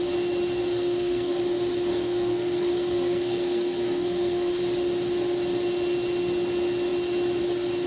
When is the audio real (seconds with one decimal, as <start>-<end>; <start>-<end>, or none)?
0.0-0.6; 1.4-1.9; 4.6-7.9